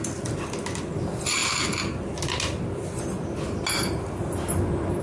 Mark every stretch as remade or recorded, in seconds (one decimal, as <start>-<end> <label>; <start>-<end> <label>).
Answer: 0.0-5.0 recorded